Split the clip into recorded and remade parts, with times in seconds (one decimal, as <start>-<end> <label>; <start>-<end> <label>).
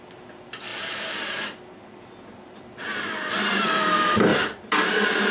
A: 0.0-5.3 recorded